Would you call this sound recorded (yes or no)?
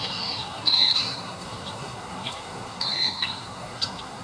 no